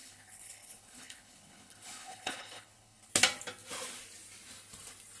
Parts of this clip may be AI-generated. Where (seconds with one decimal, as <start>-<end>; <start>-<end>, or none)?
0.0-3.1